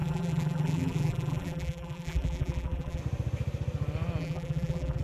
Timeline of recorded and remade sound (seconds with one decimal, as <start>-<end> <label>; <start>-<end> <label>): 0.0-3.0 remade; 3.0-4.2 recorded; 4.2-5.0 remade